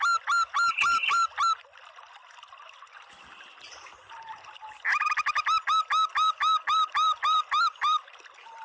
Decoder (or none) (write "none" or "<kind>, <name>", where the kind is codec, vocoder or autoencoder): none